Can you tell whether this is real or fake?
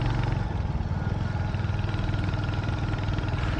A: real